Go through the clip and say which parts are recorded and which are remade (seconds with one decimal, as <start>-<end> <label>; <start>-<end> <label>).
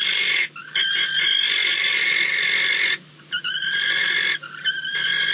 0.0-1.6 recorded; 1.6-2.1 remade; 2.1-5.3 recorded